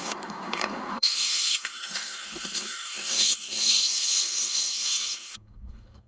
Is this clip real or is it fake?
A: fake